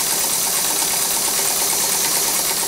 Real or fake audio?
real